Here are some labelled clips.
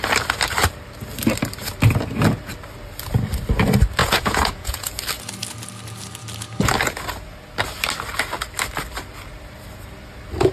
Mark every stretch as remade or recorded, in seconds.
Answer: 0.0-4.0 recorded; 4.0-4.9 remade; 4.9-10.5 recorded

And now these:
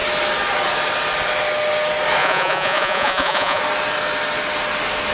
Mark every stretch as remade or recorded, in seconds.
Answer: 0.0-2.2 recorded; 2.2-3.6 remade; 3.6-5.1 recorded

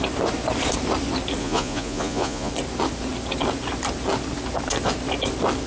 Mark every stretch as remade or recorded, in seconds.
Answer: 0.0-1.4 recorded; 1.4-2.5 remade; 2.5-5.7 recorded

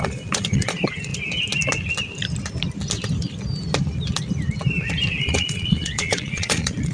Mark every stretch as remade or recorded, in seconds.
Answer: 0.0-1.1 remade; 1.1-5.2 recorded; 5.2-6.9 remade

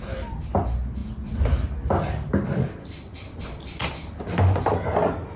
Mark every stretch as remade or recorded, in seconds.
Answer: 0.0-5.4 recorded

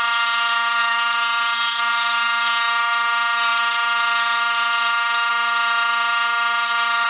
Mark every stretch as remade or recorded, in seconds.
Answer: 0.0-7.1 recorded

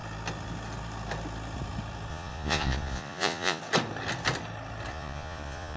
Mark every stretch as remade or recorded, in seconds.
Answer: 0.0-2.1 recorded; 2.1-3.6 remade; 3.6-4.9 recorded; 4.9-5.8 remade